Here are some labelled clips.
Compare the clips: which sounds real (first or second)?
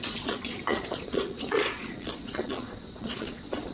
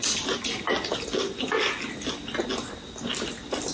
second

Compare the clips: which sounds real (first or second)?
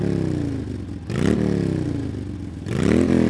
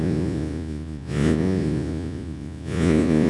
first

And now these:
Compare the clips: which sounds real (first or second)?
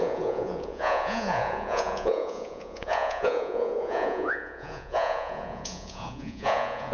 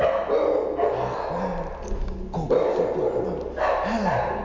second